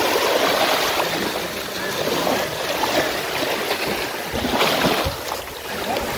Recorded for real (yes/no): yes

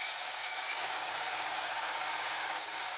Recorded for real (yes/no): no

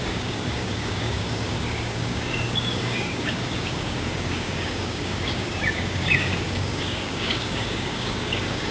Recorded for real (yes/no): no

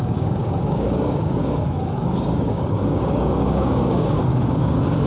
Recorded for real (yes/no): no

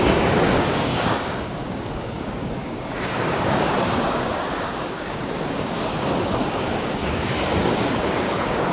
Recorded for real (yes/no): no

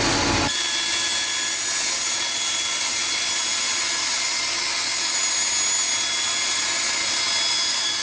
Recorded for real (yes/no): yes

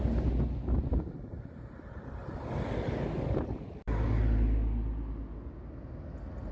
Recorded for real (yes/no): yes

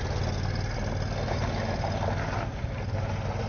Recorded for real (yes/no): yes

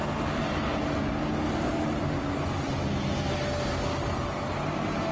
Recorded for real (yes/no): yes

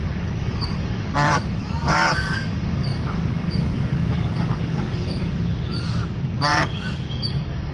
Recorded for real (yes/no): no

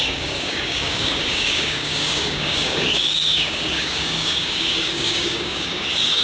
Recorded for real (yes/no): no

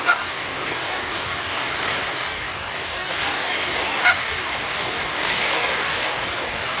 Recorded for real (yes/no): no